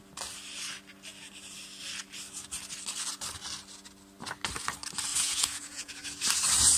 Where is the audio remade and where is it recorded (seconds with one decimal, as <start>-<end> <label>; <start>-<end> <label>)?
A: 0.0-5.1 recorded; 5.1-6.0 remade; 6.0-6.8 recorded